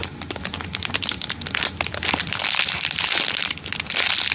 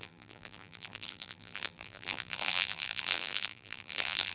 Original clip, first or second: first